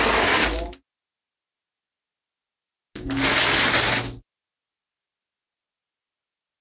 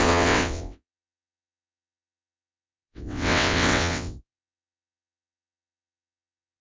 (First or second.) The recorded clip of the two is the first